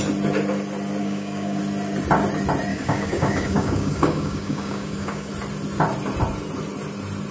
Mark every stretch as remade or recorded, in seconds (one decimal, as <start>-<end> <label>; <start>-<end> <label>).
0.0-1.0 recorded; 1.0-1.6 remade; 1.6-2.7 recorded; 2.7-5.3 remade; 5.3-7.3 recorded